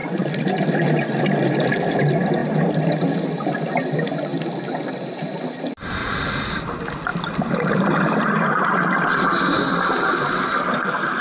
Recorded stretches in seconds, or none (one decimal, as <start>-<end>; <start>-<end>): 0.0-6.0; 6.5-11.2